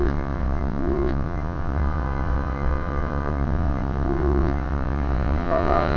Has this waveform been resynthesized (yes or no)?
yes